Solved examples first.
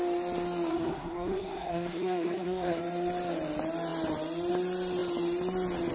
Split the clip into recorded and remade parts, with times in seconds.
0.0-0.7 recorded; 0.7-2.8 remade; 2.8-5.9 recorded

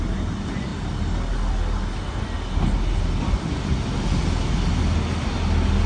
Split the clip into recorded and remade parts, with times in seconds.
0.0-5.9 recorded

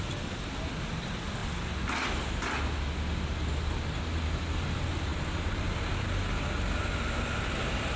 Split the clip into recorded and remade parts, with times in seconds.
0.0-8.0 recorded

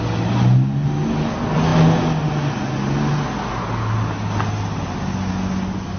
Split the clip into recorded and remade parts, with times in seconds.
0.0-6.0 recorded

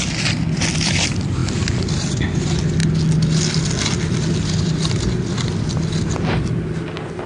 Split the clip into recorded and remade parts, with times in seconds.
0.0-7.3 recorded

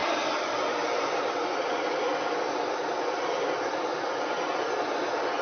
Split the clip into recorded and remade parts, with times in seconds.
0.0-5.4 recorded